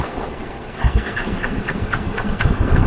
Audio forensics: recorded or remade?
remade